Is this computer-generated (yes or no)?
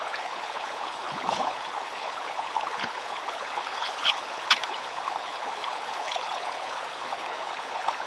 yes